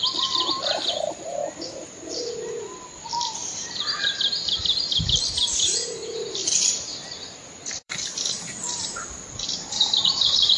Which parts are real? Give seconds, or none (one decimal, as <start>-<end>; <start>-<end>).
1.4-2.3